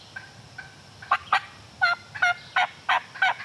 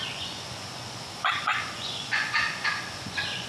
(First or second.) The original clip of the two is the first